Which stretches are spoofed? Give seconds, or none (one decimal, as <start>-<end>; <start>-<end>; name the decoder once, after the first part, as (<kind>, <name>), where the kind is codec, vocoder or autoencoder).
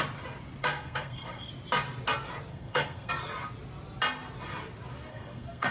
0.6-1.5 (codec, SNAC); 2.5-3.1; 5.1-5.7